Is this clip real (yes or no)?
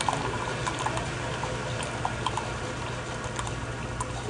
yes